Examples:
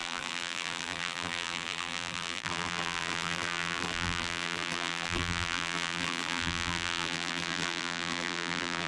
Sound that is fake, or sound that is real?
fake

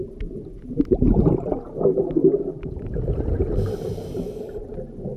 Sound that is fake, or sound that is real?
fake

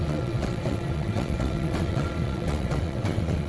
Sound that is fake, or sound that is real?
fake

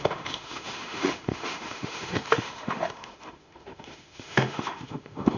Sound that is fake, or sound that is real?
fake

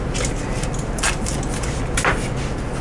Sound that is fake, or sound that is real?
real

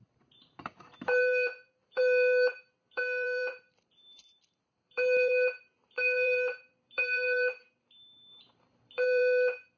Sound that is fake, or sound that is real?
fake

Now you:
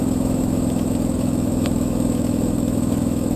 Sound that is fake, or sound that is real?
fake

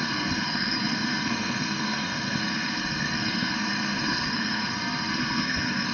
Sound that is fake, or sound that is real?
fake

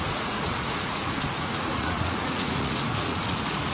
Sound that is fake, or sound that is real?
fake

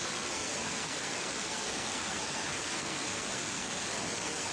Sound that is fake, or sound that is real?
fake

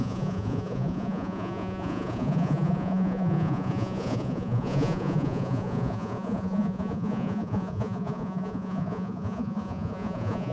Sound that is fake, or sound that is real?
fake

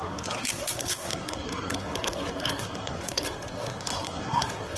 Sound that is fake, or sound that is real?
fake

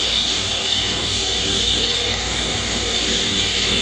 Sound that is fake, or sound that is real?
fake